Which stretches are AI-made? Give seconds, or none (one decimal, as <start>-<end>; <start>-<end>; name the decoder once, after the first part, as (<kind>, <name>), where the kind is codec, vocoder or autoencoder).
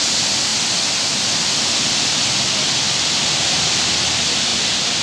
none